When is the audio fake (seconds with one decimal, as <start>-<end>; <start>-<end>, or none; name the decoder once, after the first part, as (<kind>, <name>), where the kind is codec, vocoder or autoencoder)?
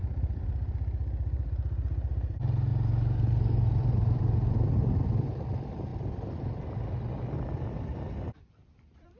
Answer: 0.0-9.2 (vocoder, BigVGAN v2)